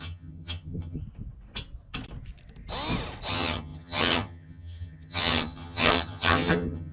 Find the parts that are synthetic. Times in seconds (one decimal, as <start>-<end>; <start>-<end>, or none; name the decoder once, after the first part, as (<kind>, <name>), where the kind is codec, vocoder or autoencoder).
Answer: 0.0-1.0 (vocoder, HiFi-GAN); 3.3-6.9